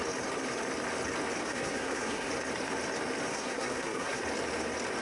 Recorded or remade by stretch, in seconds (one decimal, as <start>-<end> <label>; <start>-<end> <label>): 0.0-1.4 recorded; 1.4-2.3 remade; 2.3-3.3 recorded; 3.3-4.2 remade; 4.2-5.0 recorded